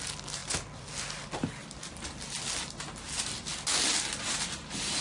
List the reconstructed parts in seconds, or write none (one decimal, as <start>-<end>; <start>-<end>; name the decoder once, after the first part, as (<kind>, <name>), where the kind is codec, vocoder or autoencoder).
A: none

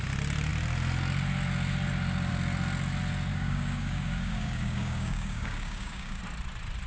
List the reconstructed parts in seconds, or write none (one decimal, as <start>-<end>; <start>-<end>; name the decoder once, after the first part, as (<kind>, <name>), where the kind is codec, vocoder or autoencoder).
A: 3.3-6.2 (codec, DAC)

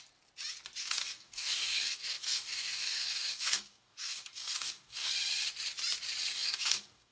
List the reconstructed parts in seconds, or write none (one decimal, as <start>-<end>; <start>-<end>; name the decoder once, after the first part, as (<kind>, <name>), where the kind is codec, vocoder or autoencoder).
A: 0.8-5.1 (codec, DAC); 6.3-7.1

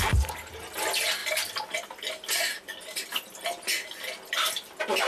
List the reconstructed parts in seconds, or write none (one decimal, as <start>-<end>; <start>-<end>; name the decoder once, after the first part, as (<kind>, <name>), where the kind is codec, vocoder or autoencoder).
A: none

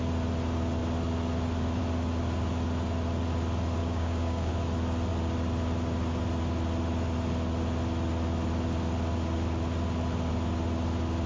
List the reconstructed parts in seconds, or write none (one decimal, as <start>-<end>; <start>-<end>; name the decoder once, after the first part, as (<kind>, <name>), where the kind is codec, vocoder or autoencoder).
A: 3.8-4.5 (codec, DAC)